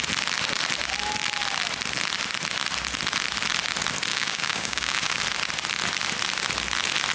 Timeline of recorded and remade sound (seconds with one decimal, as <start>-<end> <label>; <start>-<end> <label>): 0.0-4.1 recorded; 4.1-5.2 remade; 5.2-7.1 recorded